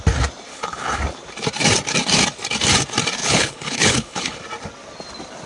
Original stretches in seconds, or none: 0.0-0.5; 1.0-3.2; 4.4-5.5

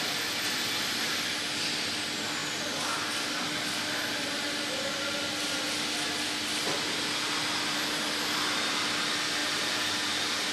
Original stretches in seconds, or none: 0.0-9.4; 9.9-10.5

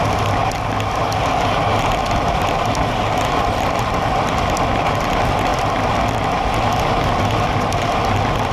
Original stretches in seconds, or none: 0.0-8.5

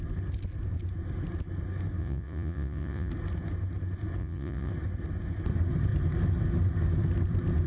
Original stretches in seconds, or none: 0.0-2.0; 3.1-4.2; 4.7-7.7